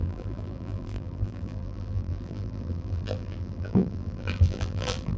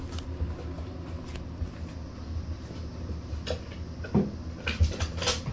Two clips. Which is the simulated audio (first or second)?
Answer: first